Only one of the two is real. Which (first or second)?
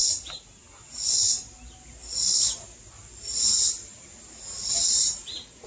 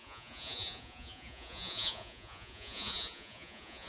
first